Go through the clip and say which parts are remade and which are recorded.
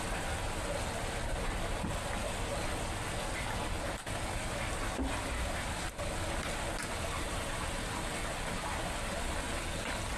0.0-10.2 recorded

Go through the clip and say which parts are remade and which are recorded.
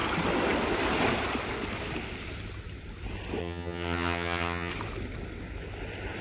0.0-3.4 recorded; 3.4-4.7 remade; 4.7-6.2 recorded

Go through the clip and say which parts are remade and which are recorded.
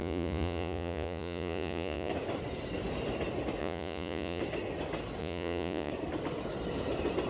0.0-2.1 remade; 2.1-3.6 recorded; 3.6-4.4 remade; 4.4-5.2 recorded; 5.2-5.9 remade; 5.9-7.3 recorded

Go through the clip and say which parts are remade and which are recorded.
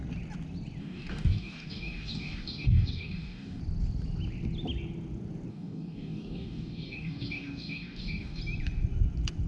0.0-0.8 recorded; 0.8-3.6 remade; 3.6-5.5 recorded; 5.5-8.4 remade; 8.4-9.5 recorded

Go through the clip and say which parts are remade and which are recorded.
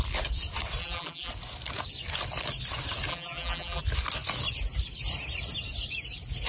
0.0-0.8 recorded; 0.8-1.3 remade; 1.3-3.1 recorded; 3.1-3.8 remade; 3.8-6.5 recorded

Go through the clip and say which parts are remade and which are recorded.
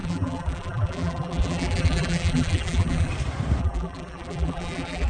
0.0-3.1 remade; 3.1-3.6 recorded; 3.6-5.1 remade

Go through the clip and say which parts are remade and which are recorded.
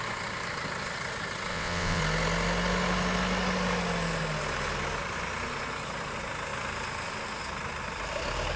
0.0-1.5 recorded; 1.5-2.0 remade; 2.0-8.6 recorded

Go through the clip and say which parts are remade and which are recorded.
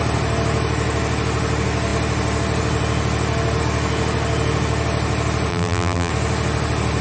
0.0-5.5 recorded; 5.5-6.1 remade; 6.1-7.0 recorded